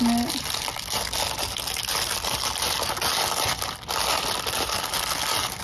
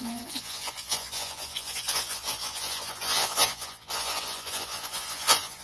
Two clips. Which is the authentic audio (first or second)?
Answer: first